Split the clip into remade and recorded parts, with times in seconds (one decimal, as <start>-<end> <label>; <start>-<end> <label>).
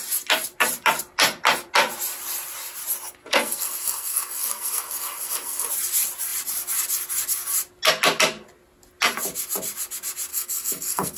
0.0-3.2 recorded; 3.2-5.7 remade; 5.7-10.3 recorded; 10.3-11.2 remade